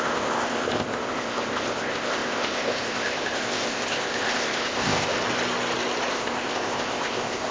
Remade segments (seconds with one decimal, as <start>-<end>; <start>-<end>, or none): 0.0-5.1; 6.1-7.5